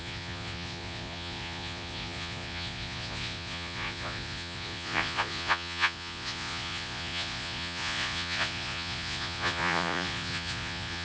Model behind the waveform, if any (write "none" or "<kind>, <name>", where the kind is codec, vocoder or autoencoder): vocoder, Vocos